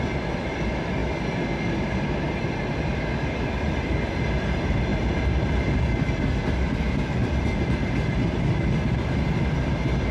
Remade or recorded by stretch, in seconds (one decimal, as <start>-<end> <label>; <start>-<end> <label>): 0.0-10.1 recorded